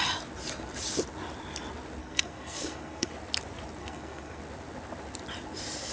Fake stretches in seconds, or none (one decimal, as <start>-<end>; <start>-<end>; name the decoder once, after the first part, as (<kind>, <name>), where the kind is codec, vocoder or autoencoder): 2.0-3.1 (codec, SNAC); 3.8-4.4